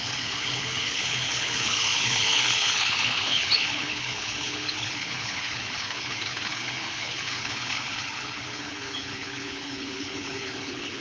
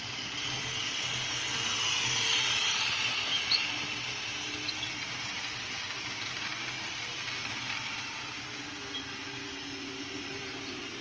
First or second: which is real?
second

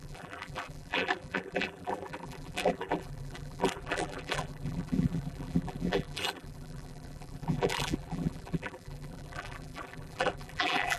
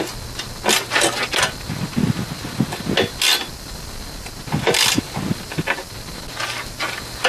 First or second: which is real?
second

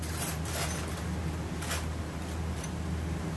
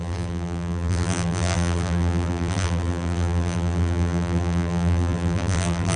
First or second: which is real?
first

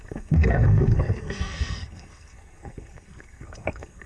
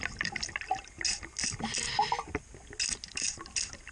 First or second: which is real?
second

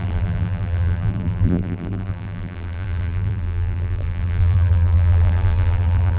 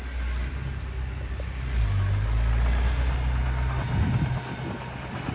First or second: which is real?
second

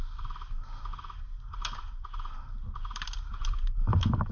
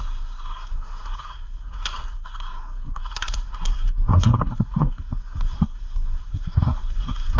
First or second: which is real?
first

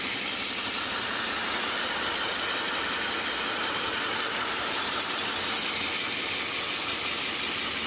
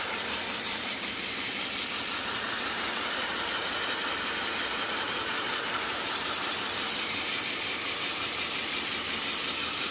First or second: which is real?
first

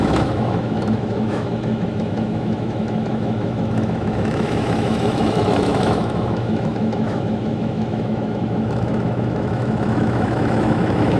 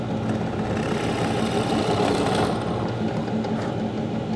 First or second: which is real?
second